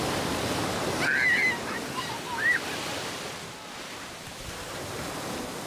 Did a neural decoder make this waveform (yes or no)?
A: no